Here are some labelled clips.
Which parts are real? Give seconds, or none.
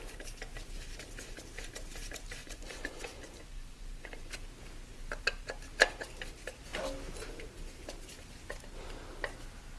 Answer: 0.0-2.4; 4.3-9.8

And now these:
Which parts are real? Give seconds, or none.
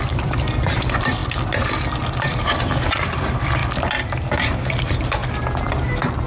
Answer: 1.2-2.4; 3.6-4.8; 5.2-6.3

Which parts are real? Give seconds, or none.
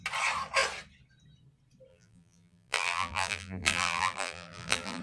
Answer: 0.0-1.9